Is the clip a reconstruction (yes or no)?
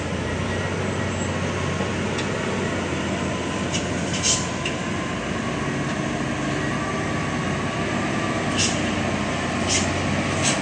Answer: no